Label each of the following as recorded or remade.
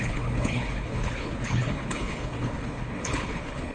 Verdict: remade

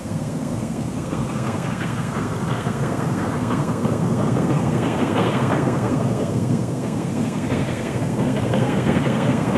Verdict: remade